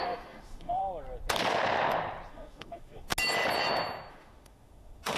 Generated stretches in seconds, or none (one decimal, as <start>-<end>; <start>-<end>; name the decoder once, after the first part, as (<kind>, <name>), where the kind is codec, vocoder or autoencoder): 0.0-0.8 (autoencoder, DAC-VAE); 2.3-3.1; 4.1-5.2

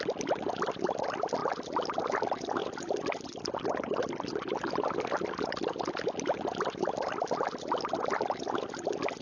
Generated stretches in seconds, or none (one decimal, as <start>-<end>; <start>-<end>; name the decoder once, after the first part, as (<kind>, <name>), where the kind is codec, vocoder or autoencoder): none

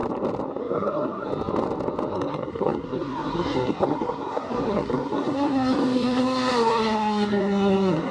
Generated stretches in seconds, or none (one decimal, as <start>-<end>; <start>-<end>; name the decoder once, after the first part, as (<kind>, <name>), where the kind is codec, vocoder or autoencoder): 0.6-1.3 (codec, SNAC); 2.1-8.1

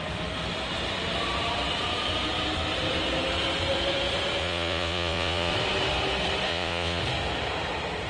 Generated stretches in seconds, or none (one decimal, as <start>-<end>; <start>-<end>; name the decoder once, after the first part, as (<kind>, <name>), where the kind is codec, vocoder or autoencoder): 4.4-5.5 (vocoder, Vocos); 6.5-7.0

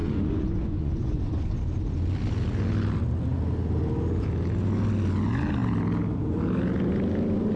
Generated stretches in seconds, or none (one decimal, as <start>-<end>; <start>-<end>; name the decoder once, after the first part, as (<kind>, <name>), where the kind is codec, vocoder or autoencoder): 0.0-1.2 (vocoder, Vocos)

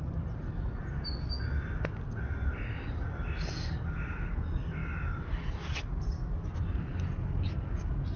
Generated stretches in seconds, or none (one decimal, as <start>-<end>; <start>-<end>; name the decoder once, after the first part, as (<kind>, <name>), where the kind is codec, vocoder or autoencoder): none

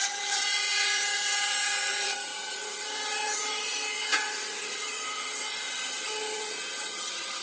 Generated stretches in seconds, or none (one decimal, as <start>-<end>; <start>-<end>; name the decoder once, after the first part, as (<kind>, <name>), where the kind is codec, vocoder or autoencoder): 0.0-7.4 (vocoder, HiFi-GAN)